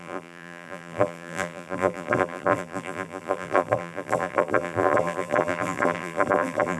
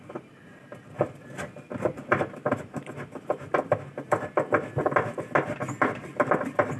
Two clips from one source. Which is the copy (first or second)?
first